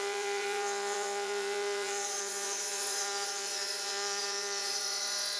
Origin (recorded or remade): remade